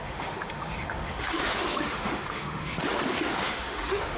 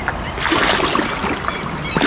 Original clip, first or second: second